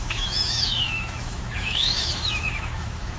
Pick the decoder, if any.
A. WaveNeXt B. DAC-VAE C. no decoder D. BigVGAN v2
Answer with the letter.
B